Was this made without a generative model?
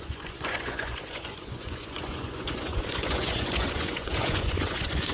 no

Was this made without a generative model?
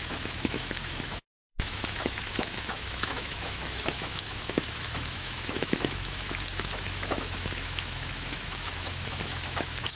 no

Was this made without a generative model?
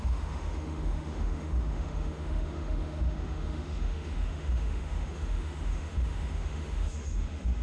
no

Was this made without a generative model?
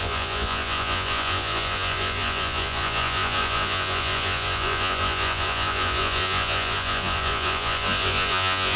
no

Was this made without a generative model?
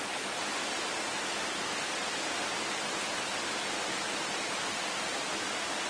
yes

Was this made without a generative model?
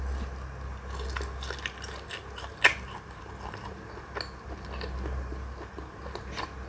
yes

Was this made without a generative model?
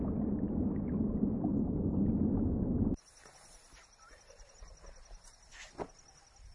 yes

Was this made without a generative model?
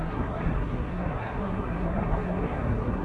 no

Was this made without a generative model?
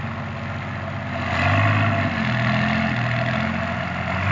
yes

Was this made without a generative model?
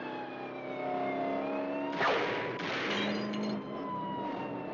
yes